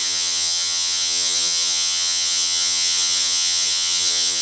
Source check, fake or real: fake